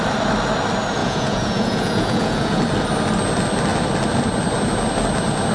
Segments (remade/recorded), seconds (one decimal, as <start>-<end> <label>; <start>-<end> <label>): 0.0-1.0 recorded; 1.0-2.6 remade; 2.6-5.5 recorded